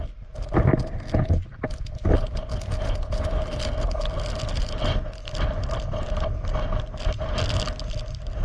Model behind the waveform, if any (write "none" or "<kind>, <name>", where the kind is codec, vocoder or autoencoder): none